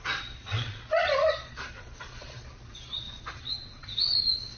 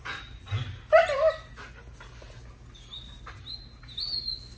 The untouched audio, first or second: second